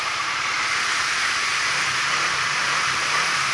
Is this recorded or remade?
remade